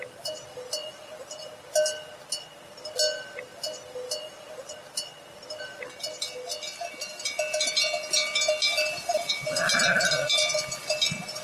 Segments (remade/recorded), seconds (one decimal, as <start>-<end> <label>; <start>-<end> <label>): 0.0-11.4 recorded